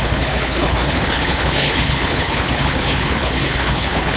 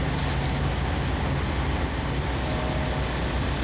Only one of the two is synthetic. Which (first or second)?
first